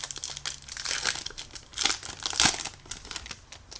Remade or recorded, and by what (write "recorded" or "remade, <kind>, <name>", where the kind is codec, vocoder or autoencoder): recorded